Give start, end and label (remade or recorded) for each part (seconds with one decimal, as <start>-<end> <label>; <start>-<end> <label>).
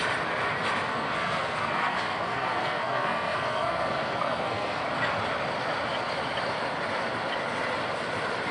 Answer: 0.0-0.9 recorded; 0.9-4.8 remade; 4.8-8.5 recorded